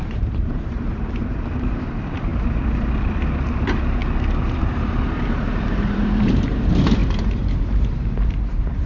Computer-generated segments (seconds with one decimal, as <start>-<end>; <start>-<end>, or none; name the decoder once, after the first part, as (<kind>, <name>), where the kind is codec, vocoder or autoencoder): 0.0-4.0 (vocoder, BigVGAN v2); 4.6-8.9